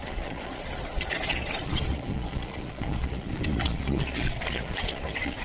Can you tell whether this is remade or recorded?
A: remade